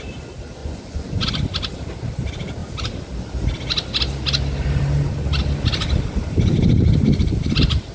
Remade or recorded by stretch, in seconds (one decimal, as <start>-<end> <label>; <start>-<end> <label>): 0.0-0.6 recorded; 0.6-1.3 remade; 1.3-7.9 recorded